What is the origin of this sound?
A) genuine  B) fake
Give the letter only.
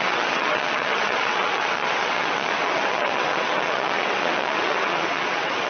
B